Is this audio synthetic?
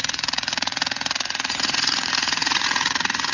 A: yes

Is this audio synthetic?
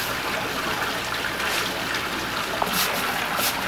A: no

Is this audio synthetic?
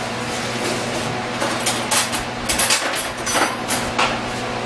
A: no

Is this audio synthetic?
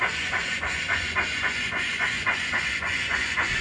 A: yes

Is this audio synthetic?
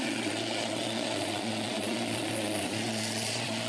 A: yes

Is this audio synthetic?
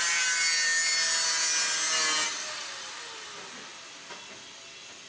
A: no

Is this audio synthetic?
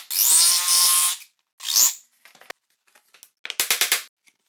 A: no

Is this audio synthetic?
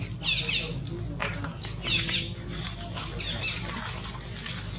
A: no